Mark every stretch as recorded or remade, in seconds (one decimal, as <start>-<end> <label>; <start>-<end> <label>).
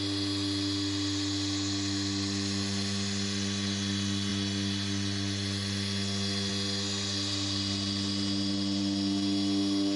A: 0.0-10.0 recorded